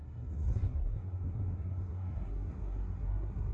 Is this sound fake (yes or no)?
yes